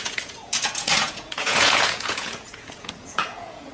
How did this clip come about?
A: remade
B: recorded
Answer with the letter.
A